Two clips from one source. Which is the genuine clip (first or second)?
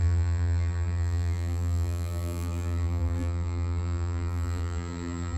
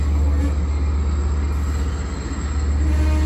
second